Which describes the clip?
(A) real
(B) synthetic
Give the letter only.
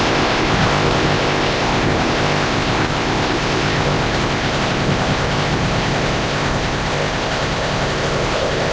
B